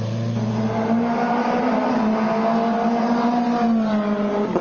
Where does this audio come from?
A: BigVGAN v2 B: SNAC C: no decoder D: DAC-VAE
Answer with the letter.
C